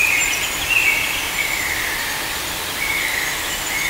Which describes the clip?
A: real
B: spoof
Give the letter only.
A